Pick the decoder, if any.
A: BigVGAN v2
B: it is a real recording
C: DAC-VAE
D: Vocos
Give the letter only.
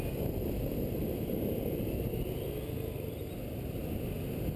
B